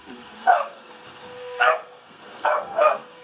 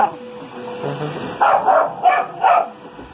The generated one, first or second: first